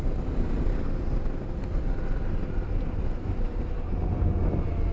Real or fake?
real